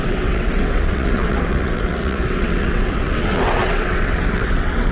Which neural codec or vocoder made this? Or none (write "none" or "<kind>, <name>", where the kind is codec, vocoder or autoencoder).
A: vocoder, WaveNeXt